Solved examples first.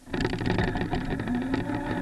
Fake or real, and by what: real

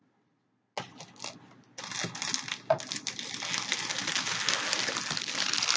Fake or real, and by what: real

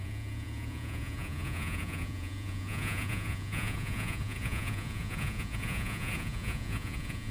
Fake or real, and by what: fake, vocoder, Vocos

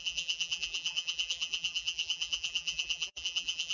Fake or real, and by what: fake, vocoder, BigVGAN v2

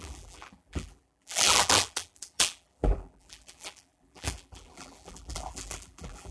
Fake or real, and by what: fake, vocoder, BigVGAN v2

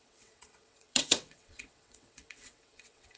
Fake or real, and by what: fake, vocoder, WaveNeXt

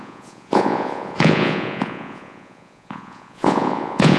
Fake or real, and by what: fake, vocoder, Vocos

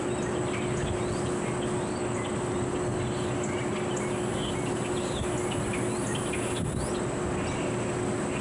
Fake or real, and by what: real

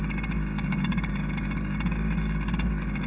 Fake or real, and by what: fake, codec, DAC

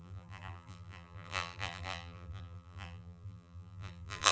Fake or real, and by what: fake, vocoder, BigVGAN v2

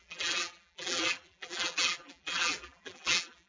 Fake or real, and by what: fake, vocoder, BigVGAN v2